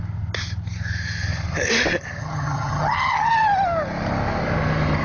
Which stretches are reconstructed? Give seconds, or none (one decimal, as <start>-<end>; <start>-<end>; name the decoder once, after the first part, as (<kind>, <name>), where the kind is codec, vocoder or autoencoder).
2.2-3.3 (vocoder, HiFi-GAN)